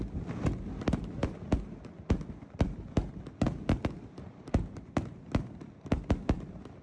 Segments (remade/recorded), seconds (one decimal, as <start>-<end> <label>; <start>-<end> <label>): 0.0-6.8 recorded